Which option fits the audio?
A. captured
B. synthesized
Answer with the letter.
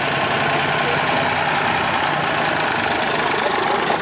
A